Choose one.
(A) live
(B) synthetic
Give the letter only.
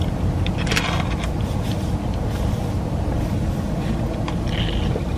A